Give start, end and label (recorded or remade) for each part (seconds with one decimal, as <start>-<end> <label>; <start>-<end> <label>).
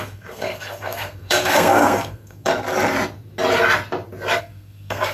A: 0.0-2.5 remade; 2.5-4.4 recorded; 4.4-5.1 remade